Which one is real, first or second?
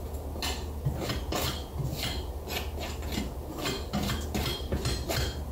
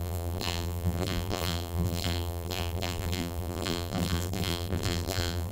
first